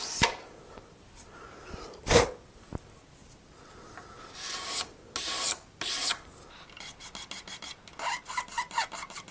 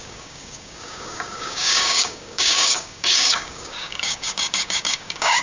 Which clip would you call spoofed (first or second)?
second